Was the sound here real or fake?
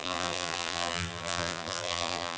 fake